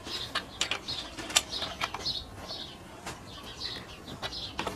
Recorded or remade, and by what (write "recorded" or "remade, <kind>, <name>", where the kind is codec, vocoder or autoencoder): recorded